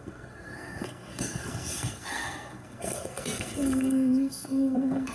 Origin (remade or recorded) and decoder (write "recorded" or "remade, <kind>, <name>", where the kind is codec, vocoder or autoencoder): remade, codec, SNAC